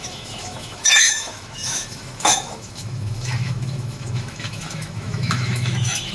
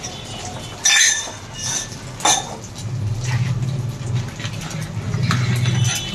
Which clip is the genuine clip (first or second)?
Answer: second